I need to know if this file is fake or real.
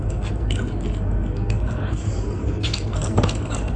fake